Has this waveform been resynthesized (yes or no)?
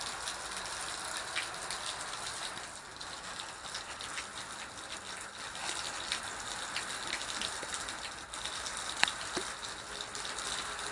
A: no